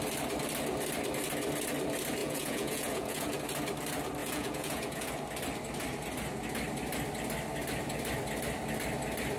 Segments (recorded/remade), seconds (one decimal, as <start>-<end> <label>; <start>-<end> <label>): 0.0-2.2 recorded; 2.2-3.4 remade; 3.4-4.2 recorded; 4.2-5.1 remade; 5.1-9.4 recorded